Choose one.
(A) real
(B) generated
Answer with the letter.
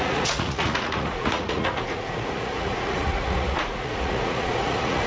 B